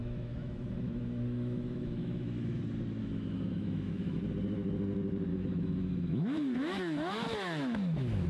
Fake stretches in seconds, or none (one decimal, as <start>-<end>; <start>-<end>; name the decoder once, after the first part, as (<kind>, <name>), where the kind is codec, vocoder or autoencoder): 0.0-2.6 (autoencoder, DAC-VAE); 3.0-4.2; 5.3-8.3